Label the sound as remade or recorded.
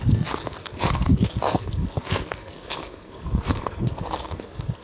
remade